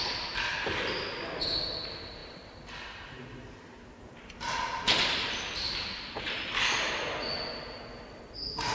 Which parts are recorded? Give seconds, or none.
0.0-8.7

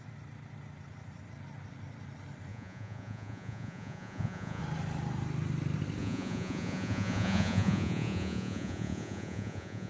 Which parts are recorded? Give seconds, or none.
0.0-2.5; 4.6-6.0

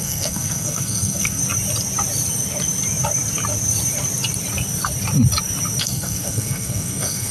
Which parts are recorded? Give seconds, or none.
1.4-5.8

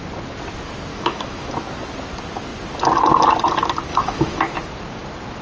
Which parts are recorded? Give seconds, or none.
0.0-0.9; 1.5-3.9; 4.4-5.4